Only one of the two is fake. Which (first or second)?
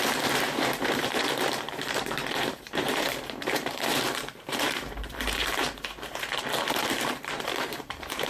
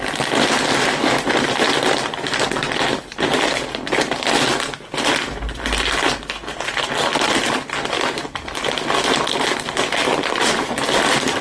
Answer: first